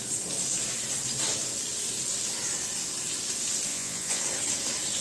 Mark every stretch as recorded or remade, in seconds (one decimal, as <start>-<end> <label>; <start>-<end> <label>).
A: 0.0-3.7 recorded; 3.7-4.2 remade; 4.2-5.0 recorded